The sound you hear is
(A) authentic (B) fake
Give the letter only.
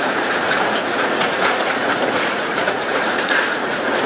B